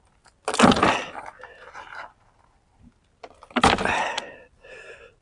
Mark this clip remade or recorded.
recorded